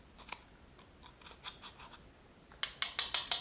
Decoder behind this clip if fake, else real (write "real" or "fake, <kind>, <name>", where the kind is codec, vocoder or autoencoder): real